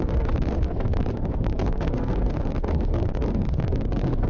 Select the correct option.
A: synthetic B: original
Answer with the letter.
A